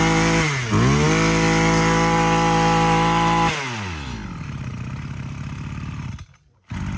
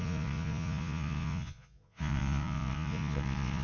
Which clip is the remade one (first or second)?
second